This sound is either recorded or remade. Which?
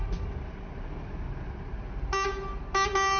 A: recorded